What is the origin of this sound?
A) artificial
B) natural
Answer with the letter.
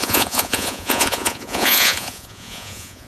A